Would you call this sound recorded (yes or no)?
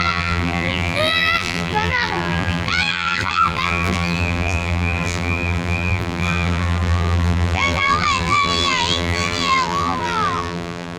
no